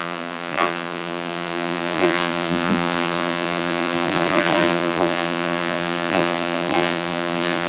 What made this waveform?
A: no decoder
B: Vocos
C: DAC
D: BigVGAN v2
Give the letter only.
D